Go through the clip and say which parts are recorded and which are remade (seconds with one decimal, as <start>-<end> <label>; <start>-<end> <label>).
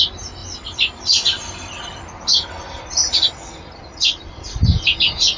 0.0-0.4 recorded; 0.4-1.4 remade; 1.4-5.4 recorded